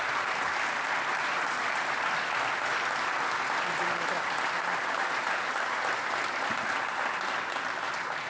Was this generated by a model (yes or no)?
no